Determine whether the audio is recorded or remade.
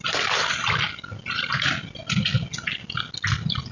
recorded